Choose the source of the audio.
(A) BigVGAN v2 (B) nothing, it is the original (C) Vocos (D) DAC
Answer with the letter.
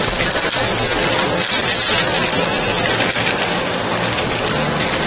B